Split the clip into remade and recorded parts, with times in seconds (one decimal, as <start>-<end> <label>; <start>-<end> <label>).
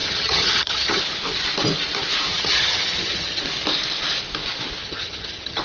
0.0-1.0 remade; 1.0-2.3 recorded; 2.3-3.4 remade; 3.4-4.8 recorded; 4.8-5.6 remade